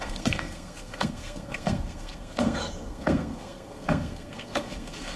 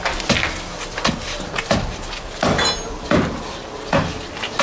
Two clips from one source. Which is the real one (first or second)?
second